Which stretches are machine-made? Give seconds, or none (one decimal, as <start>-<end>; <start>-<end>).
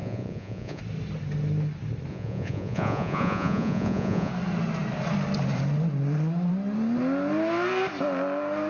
0.0-0.8; 2.1-4.3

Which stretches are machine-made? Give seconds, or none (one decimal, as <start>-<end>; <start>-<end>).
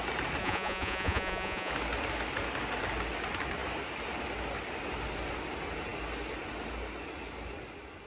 0.4-1.7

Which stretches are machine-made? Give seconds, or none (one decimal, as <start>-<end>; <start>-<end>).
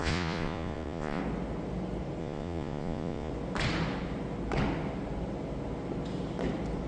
0.0-1.2; 2.2-3.3